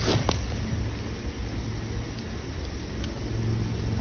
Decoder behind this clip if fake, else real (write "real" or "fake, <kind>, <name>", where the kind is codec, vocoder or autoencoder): real